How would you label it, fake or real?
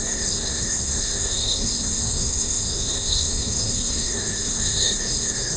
fake